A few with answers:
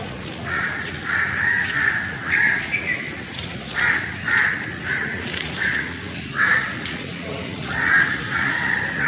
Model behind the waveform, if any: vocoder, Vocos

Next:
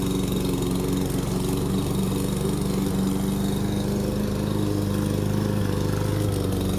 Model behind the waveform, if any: none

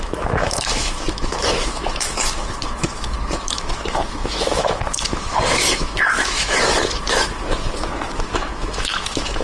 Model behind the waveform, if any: autoencoder, DAC-VAE